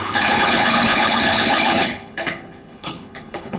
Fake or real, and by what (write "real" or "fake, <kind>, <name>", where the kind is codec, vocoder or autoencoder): fake, codec, HILCodec